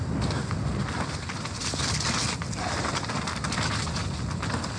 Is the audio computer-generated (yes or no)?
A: no